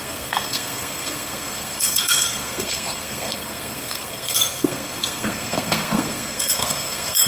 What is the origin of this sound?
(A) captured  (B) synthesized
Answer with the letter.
B